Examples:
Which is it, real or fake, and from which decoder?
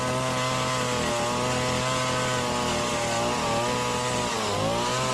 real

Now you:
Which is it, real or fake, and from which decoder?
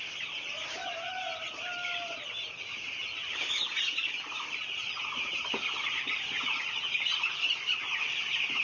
real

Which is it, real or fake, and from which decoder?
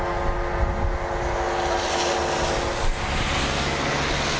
real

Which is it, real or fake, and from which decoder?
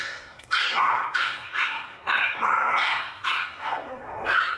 fake, codec, SNAC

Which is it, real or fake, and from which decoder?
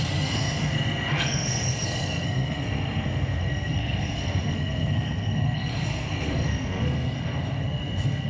fake, codec, SNAC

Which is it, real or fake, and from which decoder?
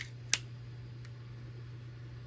real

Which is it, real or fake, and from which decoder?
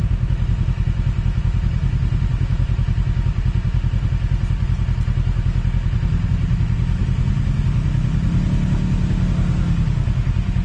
real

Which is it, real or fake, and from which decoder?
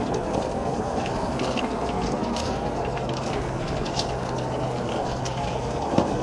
fake, codec, SNAC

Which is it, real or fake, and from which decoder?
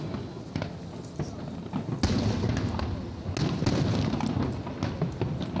real